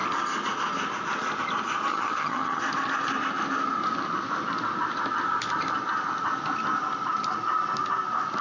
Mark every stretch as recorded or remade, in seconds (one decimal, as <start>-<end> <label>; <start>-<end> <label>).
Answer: 0.0-1.9 recorded; 1.9-2.6 remade; 2.6-8.4 recorded